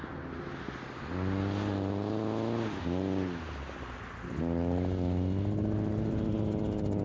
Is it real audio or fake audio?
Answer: real